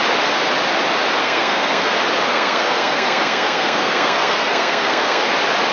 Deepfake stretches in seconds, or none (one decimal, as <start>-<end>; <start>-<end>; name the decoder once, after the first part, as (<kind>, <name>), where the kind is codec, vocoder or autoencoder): 1.2-1.9 (codec, SNAC); 2.3-5.2